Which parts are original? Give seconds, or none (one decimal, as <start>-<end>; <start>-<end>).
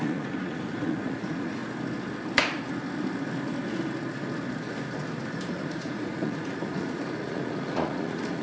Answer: 1.6-5.5